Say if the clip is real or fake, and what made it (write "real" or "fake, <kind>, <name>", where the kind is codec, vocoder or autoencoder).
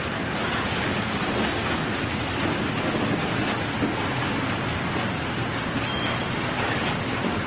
real